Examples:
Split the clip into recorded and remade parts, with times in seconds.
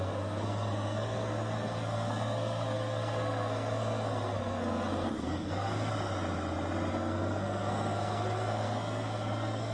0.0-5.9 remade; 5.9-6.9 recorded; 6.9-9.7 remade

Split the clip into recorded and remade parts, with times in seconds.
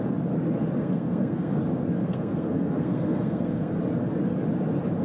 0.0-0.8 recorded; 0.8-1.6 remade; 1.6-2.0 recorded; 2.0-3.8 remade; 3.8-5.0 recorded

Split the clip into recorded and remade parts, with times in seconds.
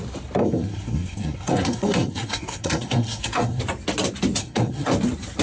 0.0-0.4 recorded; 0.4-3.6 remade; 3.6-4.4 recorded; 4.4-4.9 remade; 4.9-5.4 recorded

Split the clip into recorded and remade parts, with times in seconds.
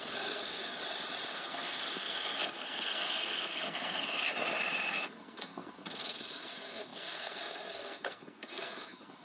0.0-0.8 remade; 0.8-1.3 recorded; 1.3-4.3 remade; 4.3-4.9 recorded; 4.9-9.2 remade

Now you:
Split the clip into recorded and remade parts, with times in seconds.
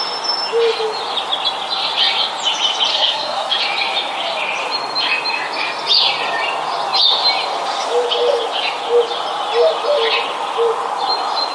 0.0-2.9 recorded; 2.9-3.5 remade; 3.5-11.5 recorded